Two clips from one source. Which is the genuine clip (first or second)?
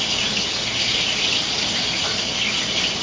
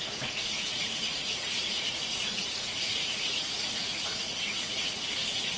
first